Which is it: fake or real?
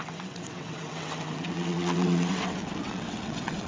fake